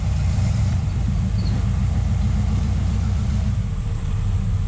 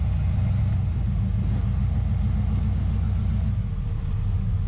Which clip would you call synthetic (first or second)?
first